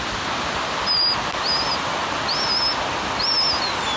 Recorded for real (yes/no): yes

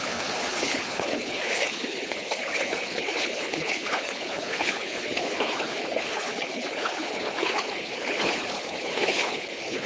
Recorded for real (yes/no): no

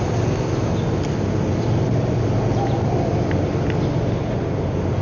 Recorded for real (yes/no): yes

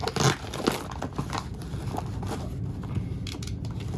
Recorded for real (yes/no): yes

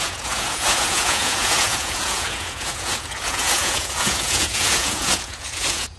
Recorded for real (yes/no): no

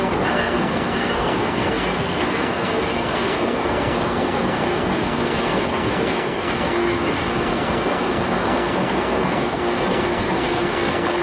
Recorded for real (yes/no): no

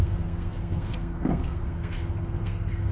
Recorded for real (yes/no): no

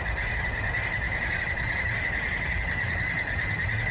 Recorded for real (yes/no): yes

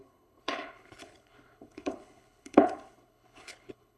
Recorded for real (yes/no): no